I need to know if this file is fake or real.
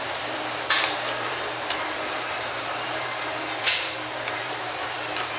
fake